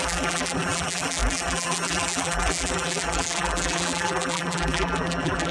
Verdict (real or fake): fake